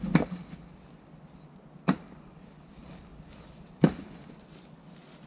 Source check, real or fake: real